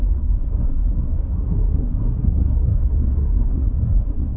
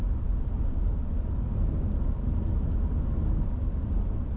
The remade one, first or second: first